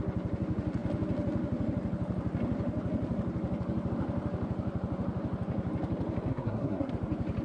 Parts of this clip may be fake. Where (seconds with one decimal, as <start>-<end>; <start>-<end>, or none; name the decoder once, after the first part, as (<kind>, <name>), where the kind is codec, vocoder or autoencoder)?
6.3-6.9 (codec, SNAC)